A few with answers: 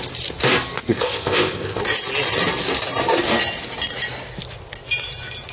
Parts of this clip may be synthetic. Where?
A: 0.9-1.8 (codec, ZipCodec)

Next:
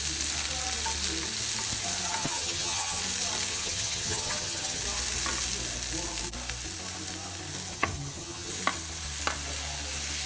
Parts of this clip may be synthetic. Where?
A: 2.2-3.0 (vocoder, HiFi-GAN); 3.5-4.8; 7.7-8.5

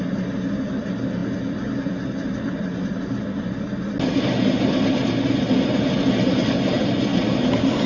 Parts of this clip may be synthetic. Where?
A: none